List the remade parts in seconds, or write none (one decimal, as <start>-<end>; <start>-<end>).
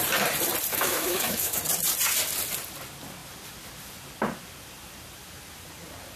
0.7-1.6